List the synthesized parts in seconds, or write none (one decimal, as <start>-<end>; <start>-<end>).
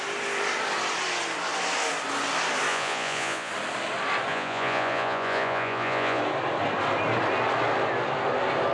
2.7-3.5; 4.3-6.2